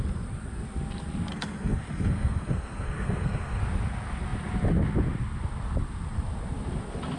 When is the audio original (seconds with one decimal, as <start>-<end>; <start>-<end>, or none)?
0.0-1.3; 3.6-7.2